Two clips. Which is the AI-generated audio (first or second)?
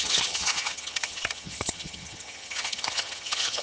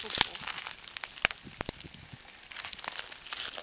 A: first